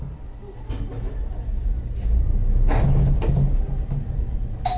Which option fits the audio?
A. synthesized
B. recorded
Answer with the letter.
B